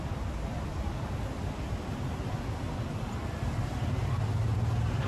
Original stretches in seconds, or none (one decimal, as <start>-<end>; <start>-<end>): 0.0-5.1